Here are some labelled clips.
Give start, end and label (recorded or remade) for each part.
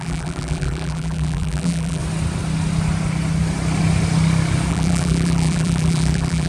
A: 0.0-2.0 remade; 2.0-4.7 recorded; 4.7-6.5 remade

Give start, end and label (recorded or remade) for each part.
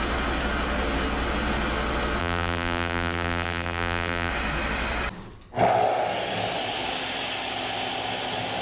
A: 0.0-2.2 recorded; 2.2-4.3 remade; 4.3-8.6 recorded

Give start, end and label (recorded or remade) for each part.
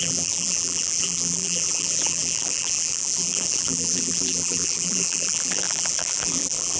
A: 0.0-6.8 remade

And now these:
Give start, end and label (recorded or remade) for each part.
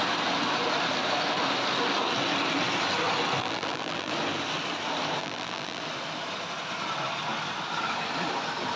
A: 0.0-3.4 recorded; 3.4-4.1 remade; 4.1-5.2 recorded; 5.2-5.8 remade; 5.8-8.8 recorded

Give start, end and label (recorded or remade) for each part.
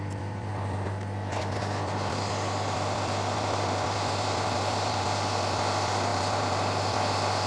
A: 0.0-0.5 remade; 0.5-5.0 recorded; 5.0-7.5 remade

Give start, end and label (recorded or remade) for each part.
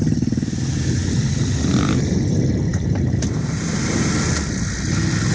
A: 0.0-2.7 recorded; 2.7-4.1 remade; 4.1-5.3 recorded